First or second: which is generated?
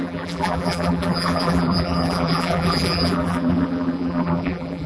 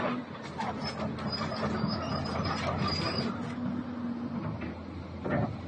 first